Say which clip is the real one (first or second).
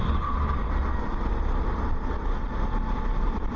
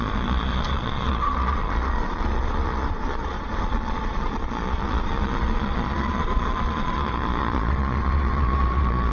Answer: first